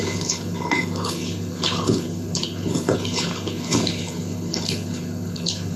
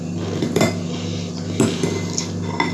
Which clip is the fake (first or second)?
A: first